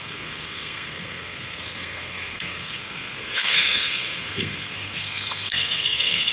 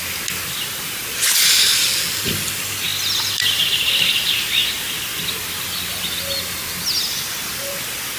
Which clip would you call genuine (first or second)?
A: second